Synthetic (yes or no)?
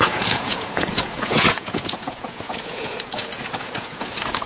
yes